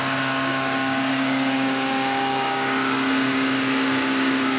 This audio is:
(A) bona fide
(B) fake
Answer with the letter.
B